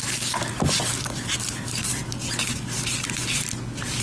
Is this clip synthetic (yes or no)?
no